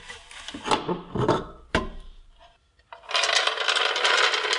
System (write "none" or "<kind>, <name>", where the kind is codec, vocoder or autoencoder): none